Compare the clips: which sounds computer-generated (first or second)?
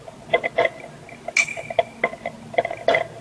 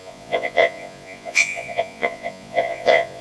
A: second